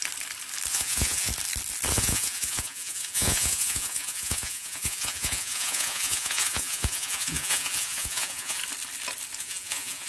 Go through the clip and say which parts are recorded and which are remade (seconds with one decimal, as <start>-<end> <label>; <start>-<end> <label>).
0.0-0.7 recorded; 0.7-1.3 remade; 1.3-1.9 recorded; 1.9-8.6 remade; 8.6-9.4 recorded; 9.4-10.1 remade